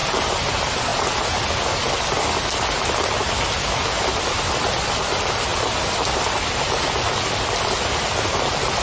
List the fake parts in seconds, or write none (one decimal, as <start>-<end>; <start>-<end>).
none